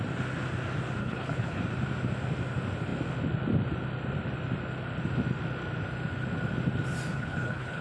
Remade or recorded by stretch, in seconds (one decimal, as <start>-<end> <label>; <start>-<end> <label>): 0.0-1.0 recorded; 1.0-1.6 remade; 1.6-7.1 recorded; 7.1-7.8 remade